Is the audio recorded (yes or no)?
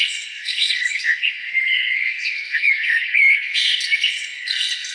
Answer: no